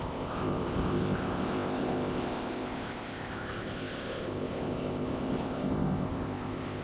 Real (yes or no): no